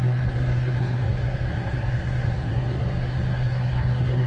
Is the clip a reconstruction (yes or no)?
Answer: yes